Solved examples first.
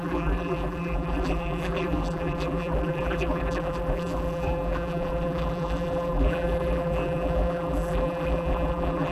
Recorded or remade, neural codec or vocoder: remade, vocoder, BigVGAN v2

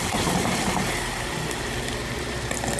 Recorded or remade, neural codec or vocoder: recorded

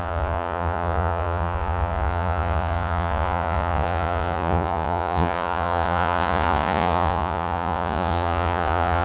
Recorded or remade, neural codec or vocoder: remade, vocoder, Vocos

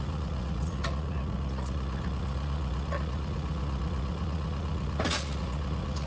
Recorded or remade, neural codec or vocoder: remade, vocoder, Vocos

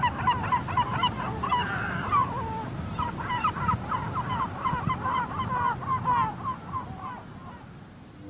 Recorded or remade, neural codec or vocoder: recorded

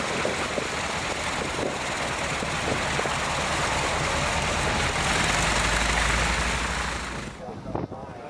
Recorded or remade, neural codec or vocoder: recorded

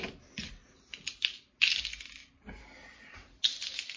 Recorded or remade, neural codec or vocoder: recorded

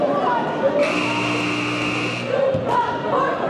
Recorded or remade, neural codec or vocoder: recorded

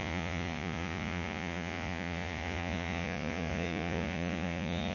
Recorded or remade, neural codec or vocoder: remade, vocoder, Vocos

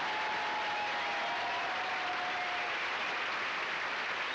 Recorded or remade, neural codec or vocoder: recorded